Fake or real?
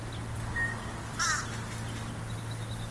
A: real